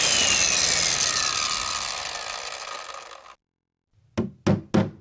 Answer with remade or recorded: recorded